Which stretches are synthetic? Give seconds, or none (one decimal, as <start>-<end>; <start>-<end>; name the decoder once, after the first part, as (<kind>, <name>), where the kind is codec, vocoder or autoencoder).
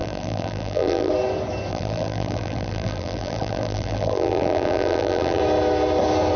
0.0-1.1 (vocoder, BigVGAN v2); 1.7-5.4